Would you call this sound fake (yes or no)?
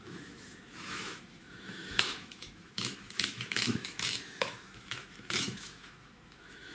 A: yes